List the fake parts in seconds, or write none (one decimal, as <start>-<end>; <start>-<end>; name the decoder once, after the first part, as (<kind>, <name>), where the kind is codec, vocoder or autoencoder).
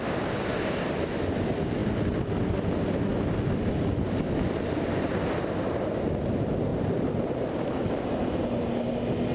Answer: 6.7-8.0 (vocoder, BigVGAN v2)